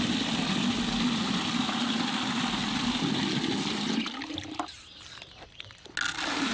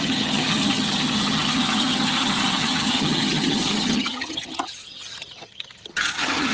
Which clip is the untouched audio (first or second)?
first